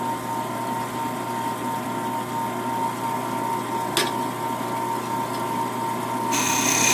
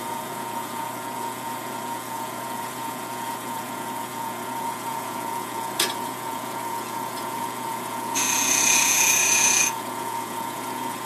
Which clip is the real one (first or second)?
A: first